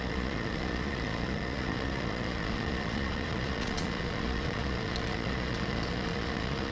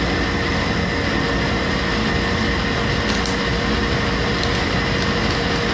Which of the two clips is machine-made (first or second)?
first